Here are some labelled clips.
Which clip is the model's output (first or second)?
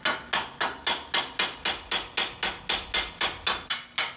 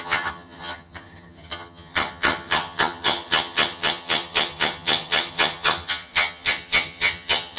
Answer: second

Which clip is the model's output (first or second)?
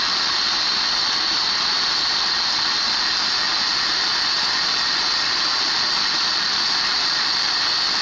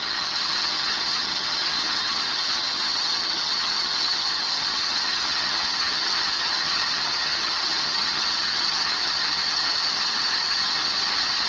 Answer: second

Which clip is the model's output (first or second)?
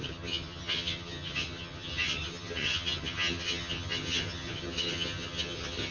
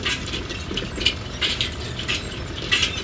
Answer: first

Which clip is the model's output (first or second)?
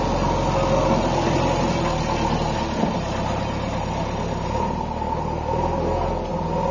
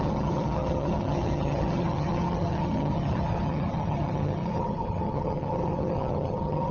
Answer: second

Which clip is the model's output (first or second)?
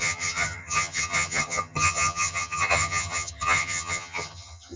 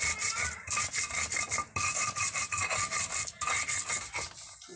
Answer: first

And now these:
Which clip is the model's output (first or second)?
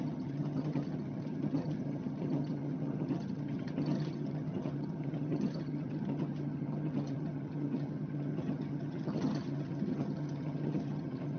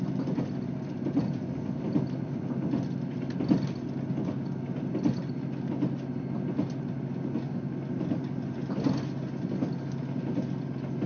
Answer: first